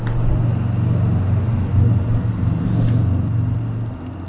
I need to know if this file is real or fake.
real